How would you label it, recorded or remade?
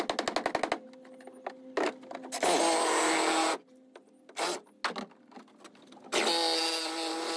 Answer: recorded